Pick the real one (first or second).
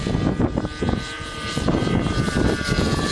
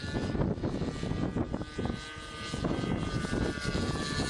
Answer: second